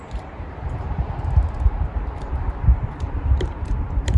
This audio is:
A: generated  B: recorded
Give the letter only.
A